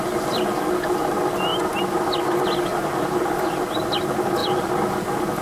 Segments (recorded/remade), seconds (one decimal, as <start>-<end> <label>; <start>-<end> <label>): 0.0-5.4 recorded